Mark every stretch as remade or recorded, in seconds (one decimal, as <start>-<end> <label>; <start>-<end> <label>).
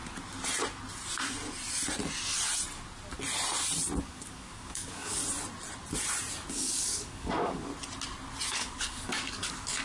0.0-4.0 recorded; 4.0-5.2 remade; 5.2-6.5 recorded; 6.5-7.7 remade; 7.7-8.5 recorded; 8.5-9.8 remade